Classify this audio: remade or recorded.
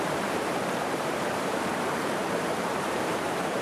remade